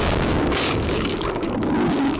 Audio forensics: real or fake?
fake